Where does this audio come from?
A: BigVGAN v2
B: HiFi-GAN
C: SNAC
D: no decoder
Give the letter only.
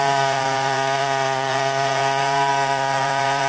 A